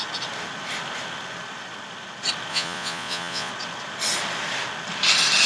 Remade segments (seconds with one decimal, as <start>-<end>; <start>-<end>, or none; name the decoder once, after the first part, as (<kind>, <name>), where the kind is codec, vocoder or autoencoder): 2.5-3.5 (vocoder, Vocos)